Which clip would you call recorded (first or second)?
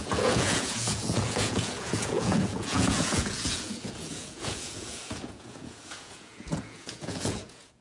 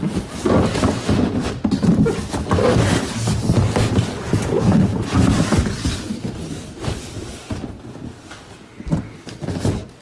second